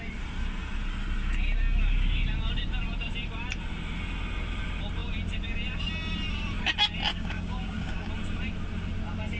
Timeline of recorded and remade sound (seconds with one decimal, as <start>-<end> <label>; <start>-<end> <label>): 0.0-7.1 recorded; 7.1-8.1 remade; 8.1-9.4 recorded